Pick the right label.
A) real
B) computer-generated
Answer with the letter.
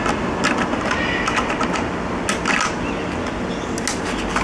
A